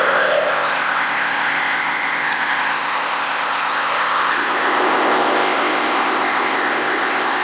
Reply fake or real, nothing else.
fake